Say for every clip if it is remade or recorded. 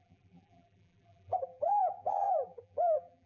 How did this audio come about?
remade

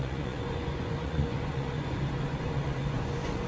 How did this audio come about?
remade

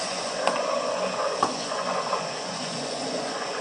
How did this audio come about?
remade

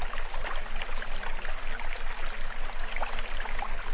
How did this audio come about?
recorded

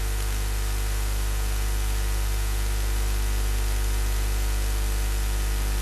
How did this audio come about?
recorded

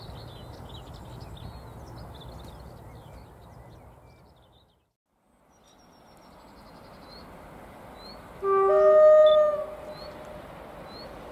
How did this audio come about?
recorded